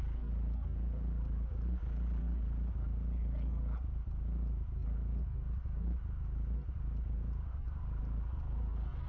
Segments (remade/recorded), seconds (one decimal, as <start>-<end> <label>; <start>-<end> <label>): 0.0-9.1 recorded